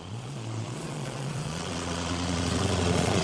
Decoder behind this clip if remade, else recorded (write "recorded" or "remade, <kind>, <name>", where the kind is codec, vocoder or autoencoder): remade, vocoder, Vocos